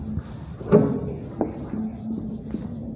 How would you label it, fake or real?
real